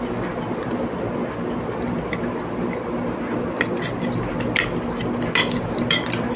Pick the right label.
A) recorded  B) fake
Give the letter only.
A